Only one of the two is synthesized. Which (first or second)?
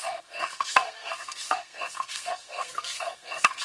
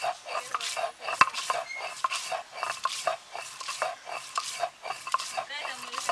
first